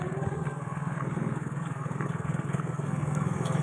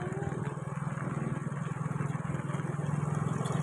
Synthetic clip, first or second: first